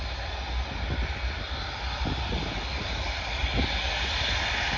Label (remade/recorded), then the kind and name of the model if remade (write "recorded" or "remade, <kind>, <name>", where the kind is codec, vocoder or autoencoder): recorded